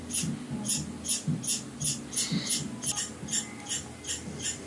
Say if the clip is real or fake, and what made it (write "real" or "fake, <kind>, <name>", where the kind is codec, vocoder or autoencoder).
real